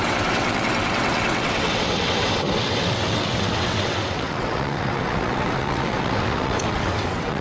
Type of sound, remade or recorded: remade